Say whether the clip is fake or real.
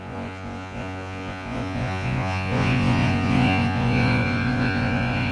fake